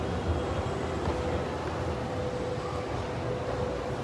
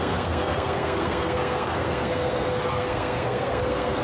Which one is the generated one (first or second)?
second